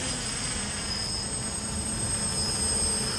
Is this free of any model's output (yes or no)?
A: yes